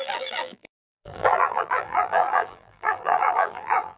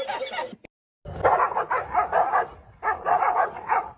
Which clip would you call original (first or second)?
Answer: second